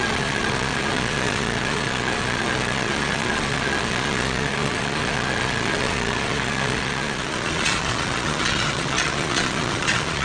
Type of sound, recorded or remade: remade